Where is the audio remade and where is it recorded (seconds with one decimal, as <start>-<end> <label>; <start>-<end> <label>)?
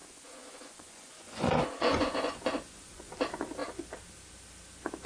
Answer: 0.0-3.1 remade; 3.1-5.1 recorded